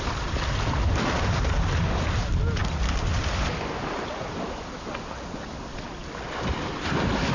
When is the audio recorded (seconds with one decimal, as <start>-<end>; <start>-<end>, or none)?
0.0-7.3